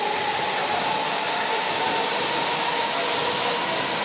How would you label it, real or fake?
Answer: real